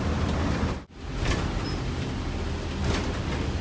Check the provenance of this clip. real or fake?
real